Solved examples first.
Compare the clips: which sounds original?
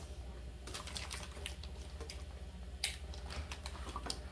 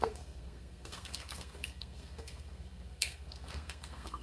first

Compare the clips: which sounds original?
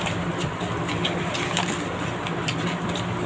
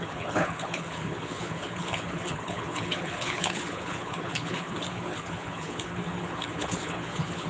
first